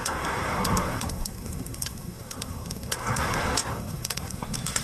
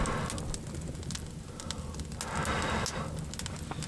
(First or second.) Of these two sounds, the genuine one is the second